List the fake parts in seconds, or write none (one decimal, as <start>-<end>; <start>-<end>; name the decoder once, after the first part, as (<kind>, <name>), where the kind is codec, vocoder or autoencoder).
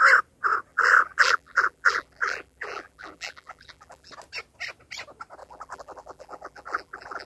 0.7-4.1 (vocoder, BigVGAN v2); 5.4-7.3